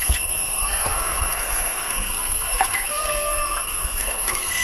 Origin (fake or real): fake